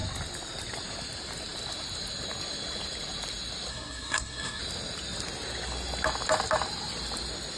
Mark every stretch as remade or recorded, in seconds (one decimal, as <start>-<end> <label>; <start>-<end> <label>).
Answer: 0.0-3.7 recorded; 3.7-4.6 remade; 4.6-7.6 recorded

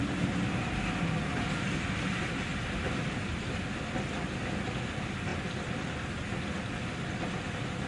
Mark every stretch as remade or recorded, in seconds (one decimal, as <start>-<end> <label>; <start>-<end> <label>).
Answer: 0.0-7.9 recorded

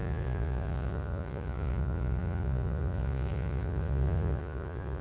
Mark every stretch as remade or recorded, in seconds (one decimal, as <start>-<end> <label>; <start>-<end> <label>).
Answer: 0.0-5.0 remade

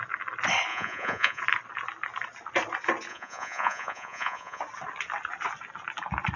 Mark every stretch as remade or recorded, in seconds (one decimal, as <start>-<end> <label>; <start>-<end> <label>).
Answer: 0.0-0.7 recorded; 0.7-1.4 remade; 1.4-3.1 recorded; 3.1-4.6 remade; 4.6-6.4 recorded